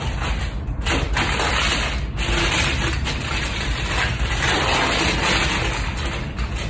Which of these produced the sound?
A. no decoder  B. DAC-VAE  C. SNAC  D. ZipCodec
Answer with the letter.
A